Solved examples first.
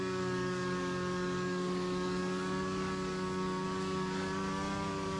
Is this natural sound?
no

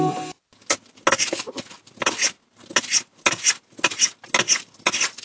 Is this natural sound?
yes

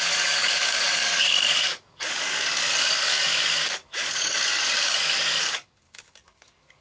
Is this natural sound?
no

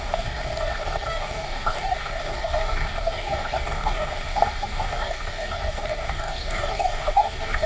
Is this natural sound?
no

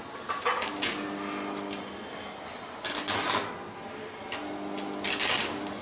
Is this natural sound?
yes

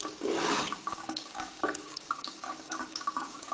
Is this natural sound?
no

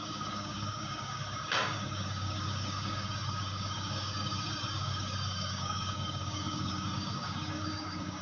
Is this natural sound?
no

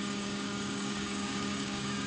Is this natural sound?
no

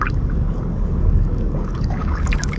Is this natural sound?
no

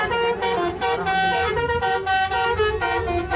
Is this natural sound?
yes